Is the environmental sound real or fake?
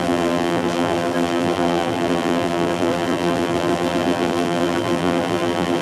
fake